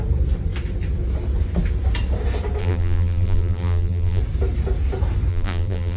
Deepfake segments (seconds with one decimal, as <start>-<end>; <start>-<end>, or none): 2.6-4.2; 5.3-6.0